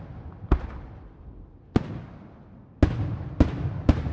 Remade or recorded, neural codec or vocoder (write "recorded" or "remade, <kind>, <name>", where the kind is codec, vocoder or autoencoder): recorded